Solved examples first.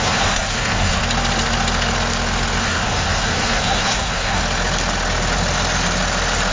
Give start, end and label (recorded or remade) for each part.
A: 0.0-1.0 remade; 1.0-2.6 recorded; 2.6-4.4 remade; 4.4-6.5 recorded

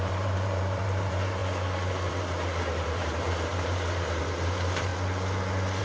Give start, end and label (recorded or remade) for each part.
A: 0.0-1.4 remade; 1.4-2.1 recorded; 2.1-4.9 remade; 4.9-5.8 recorded

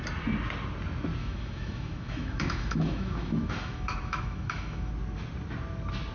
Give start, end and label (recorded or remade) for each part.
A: 0.0-1.2 recorded; 1.2-4.9 remade; 4.9-6.1 recorded